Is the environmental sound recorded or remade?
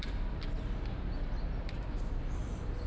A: recorded